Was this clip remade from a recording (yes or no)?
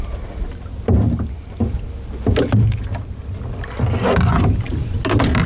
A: no